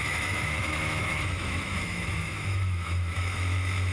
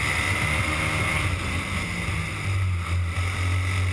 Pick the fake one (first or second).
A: first